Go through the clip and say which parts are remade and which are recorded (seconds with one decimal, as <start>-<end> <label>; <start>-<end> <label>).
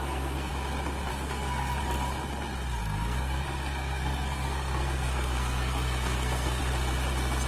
0.0-0.5 remade; 0.5-1.1 recorded; 1.1-1.8 remade; 1.8-2.8 recorded; 2.8-6.6 remade; 6.6-7.5 recorded